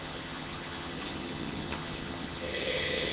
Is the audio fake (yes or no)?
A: yes